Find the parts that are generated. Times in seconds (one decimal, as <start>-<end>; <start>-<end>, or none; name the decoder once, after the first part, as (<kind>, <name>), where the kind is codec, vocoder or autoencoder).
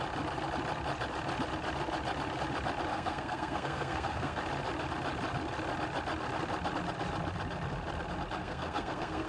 2.9-4.4 (codec, SNAC); 8.4-9.3